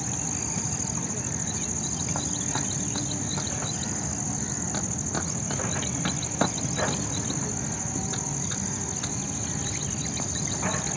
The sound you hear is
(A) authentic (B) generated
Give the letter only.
A